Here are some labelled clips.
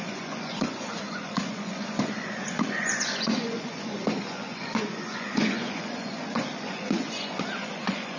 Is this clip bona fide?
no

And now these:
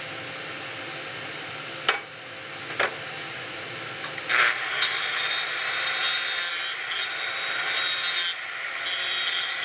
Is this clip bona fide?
yes